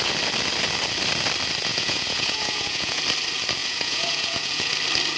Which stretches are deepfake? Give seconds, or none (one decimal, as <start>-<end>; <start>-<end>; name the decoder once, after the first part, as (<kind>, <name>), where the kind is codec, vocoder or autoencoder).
1.7-3.0 (vocoder, Vocos); 3.6-4.7